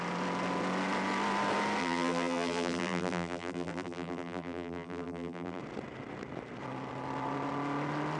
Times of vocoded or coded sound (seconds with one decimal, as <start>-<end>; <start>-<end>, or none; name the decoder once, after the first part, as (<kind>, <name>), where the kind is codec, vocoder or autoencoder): 1.8-5.6 (vocoder, BigVGAN v2)